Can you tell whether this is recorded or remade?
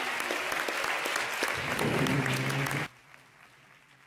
recorded